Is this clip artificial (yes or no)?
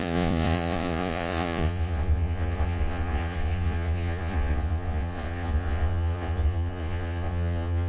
yes